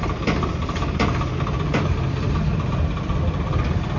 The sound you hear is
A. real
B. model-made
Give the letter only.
A